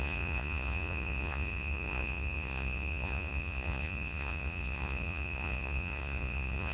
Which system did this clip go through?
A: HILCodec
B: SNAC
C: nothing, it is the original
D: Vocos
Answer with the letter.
D